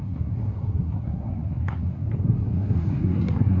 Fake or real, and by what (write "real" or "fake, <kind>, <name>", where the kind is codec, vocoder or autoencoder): fake, codec, SNAC